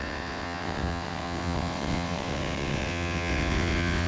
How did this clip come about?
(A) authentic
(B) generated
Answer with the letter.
B